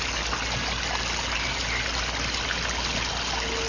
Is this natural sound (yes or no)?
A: yes